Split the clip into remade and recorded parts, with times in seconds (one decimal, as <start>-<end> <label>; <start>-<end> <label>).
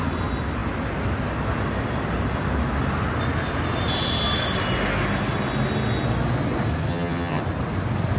0.0-6.9 recorded; 6.9-7.4 remade; 7.4-8.2 recorded